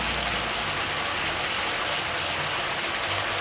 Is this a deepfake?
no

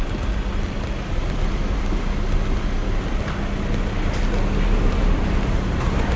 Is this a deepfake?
no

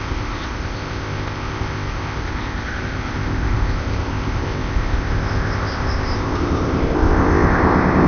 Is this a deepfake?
yes